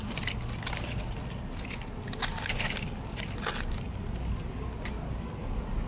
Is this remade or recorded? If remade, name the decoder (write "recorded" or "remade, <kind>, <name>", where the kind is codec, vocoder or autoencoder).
recorded